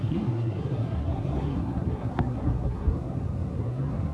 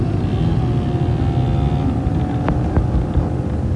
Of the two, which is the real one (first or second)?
second